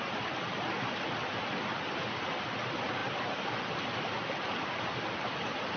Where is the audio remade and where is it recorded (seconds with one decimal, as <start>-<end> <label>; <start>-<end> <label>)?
0.0-5.8 recorded